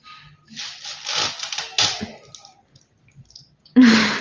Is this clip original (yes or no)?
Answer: yes